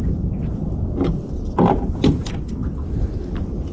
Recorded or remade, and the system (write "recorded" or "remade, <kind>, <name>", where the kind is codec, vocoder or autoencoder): recorded